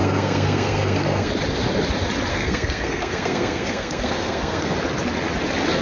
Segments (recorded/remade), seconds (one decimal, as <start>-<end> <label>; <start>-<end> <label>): 0.0-1.3 remade; 1.3-2.3 recorded; 2.3-4.7 remade; 4.7-5.8 recorded